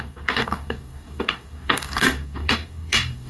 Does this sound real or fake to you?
fake